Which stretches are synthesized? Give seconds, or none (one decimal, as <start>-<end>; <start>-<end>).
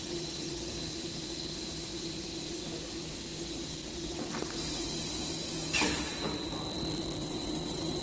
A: 0.0-0.7; 3.8-4.5; 7.2-8.0